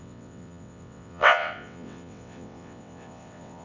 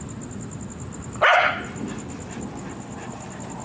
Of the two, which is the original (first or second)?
second